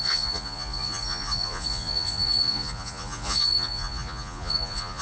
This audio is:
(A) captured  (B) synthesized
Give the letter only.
B